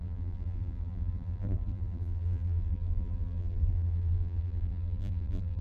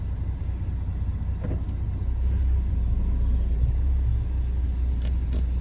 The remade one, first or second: first